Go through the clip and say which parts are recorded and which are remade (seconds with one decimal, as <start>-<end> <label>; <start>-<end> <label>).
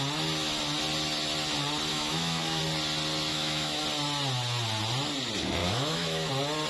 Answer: 0.0-1.9 recorded; 1.9-2.6 remade; 2.6-3.3 recorded; 3.3-3.8 remade; 3.8-5.6 recorded; 5.6-6.3 remade; 6.3-6.7 recorded